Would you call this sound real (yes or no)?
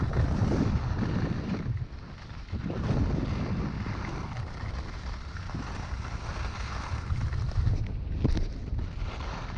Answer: yes